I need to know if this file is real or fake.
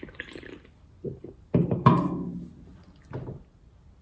real